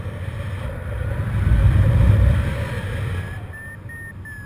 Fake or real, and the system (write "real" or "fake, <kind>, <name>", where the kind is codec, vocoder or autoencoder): real